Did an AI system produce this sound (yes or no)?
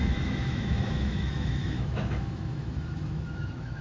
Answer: yes